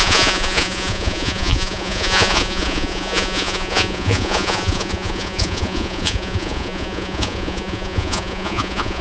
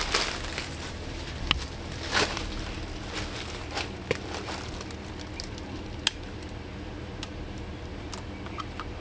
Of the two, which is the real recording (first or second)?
second